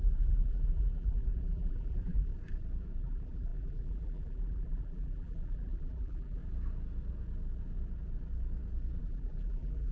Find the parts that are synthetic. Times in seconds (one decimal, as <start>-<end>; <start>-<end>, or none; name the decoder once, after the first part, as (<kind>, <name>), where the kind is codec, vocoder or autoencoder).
0.0-2.3 (vocoder, BigVGAN v2); 3.0-6.4; 9.0-9.9